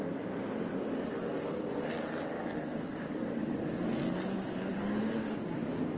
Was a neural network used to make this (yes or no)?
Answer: no